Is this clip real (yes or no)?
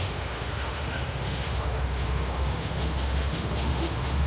no